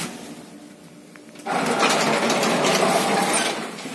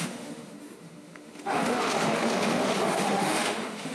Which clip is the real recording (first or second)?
first